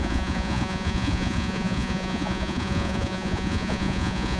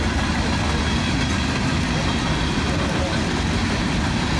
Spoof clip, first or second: first